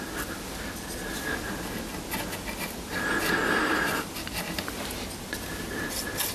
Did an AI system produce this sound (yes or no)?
no